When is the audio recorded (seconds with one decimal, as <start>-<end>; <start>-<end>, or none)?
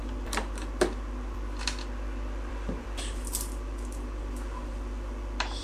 none